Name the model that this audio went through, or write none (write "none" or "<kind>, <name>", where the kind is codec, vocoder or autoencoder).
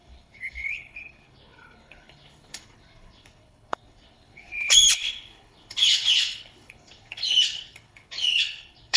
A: codec, HILCodec